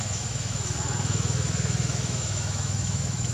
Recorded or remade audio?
remade